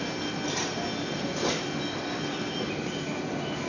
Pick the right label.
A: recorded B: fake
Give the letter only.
A